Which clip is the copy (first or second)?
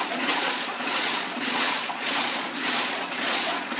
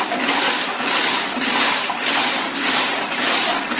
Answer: first